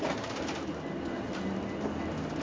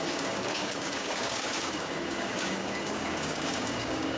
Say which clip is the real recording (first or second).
first